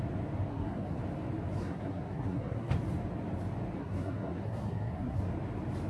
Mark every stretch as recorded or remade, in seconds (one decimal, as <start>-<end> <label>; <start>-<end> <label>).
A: 0.0-0.5 recorded; 0.5-1.0 remade; 1.0-1.6 recorded; 1.6-2.7 remade; 2.7-3.8 recorded; 3.8-5.2 remade; 5.2-5.9 recorded